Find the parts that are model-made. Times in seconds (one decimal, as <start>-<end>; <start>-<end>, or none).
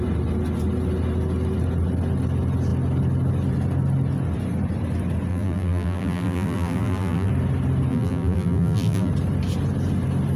5.3-7.3; 7.9-9.1